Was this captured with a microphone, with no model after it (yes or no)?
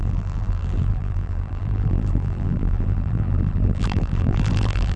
no